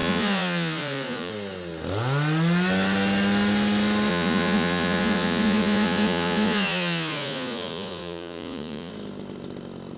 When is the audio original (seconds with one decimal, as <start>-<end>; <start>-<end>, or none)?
1.3-4.1; 8.9-10.0